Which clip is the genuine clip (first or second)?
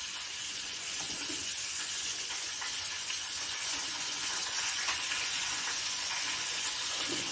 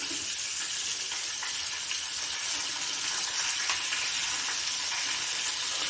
second